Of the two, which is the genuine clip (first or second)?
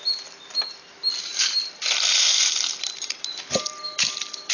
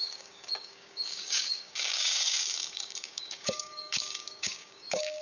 first